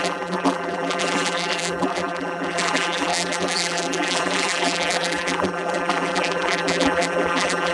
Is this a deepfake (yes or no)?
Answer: yes